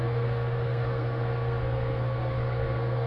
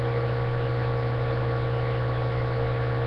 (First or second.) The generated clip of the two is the first